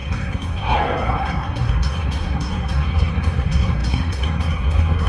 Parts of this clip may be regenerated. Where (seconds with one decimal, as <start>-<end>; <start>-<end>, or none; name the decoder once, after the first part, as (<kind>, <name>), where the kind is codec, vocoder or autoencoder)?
0.0-5.1 (codec, SNAC)